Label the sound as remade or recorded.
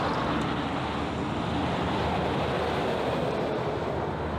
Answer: recorded